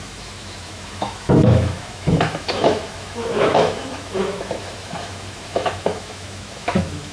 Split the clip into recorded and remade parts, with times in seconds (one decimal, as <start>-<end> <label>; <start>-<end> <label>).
0.0-7.1 remade

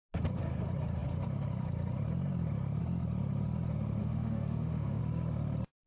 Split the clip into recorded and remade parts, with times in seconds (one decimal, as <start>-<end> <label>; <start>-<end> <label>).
0.0-4.0 recorded; 4.0-5.0 remade; 5.0-5.9 recorded

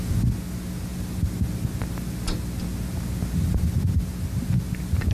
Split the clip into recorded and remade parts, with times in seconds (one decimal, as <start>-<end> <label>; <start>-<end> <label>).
0.0-5.1 recorded

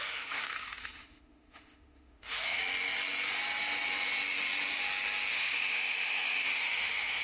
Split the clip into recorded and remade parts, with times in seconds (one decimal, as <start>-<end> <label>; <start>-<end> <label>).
0.0-2.6 remade; 2.6-5.3 recorded; 5.3-7.2 remade